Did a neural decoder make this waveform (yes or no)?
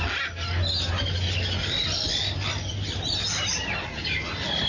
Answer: no